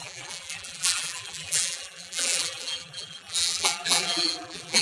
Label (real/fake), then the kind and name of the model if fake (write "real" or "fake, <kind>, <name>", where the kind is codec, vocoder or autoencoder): fake, vocoder, BigVGAN v2